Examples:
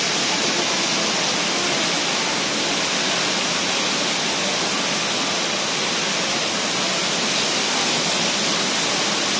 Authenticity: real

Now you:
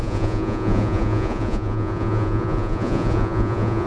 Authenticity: fake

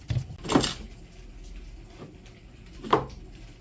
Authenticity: real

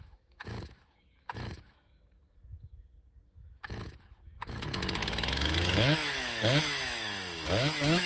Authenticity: fake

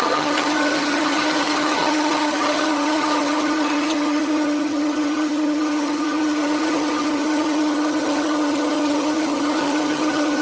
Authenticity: fake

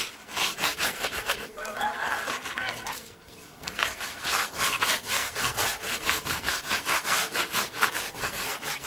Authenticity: fake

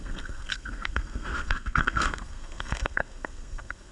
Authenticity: fake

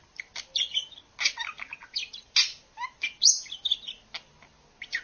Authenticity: real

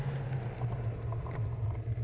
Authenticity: real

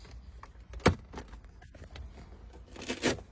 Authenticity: real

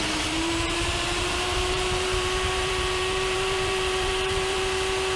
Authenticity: fake